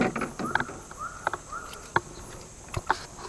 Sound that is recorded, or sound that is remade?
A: recorded